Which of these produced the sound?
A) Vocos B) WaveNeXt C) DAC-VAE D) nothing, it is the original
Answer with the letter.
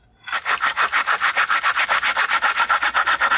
D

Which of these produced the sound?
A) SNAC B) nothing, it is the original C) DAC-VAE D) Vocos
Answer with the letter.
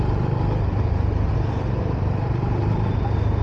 B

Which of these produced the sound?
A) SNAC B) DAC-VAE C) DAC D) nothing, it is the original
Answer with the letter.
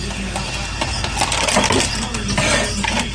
D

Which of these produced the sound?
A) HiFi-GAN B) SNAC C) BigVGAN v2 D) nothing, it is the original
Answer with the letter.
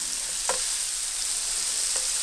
D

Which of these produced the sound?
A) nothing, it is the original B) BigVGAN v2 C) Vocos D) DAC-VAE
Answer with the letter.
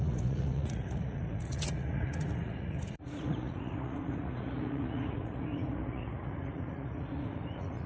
C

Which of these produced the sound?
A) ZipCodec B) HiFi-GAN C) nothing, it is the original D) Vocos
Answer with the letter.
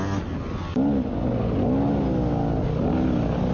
C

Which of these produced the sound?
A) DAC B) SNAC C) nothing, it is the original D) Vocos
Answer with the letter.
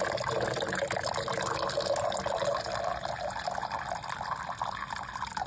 C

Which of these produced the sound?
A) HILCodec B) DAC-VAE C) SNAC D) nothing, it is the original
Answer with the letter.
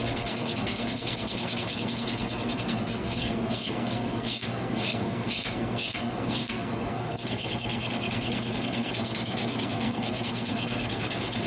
C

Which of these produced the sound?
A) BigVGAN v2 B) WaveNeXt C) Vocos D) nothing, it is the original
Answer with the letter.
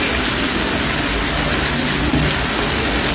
D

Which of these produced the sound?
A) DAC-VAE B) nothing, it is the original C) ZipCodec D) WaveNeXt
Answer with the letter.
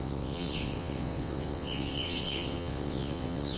D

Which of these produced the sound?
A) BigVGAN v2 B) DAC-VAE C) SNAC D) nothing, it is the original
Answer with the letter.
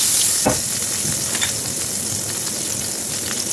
D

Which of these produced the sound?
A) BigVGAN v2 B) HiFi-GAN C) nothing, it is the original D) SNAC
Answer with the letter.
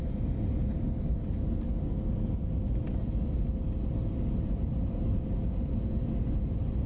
C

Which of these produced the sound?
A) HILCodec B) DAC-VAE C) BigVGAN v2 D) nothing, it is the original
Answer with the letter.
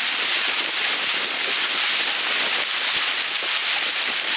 D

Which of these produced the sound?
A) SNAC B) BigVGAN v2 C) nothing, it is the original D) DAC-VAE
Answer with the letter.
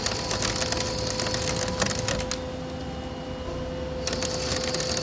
C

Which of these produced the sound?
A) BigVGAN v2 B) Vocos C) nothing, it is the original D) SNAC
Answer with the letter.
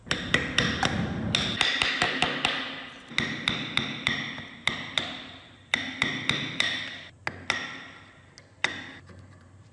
C